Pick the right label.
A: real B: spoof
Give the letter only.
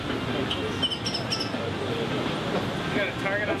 A